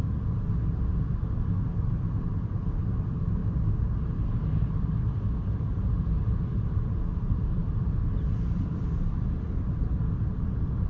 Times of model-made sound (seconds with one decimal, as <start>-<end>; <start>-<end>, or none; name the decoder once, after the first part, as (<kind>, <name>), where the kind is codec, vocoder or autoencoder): 0.0-3.4 (vocoder, BigVGAN v2); 4.3-10.9